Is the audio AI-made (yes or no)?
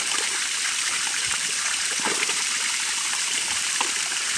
yes